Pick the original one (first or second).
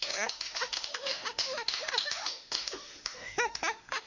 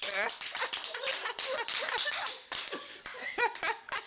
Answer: second